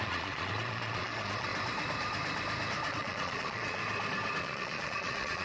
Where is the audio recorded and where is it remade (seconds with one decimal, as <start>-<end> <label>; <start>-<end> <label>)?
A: 0.0-1.5 remade; 1.5-2.9 recorded; 2.9-3.8 remade; 3.8-4.4 recorded; 4.4-5.4 remade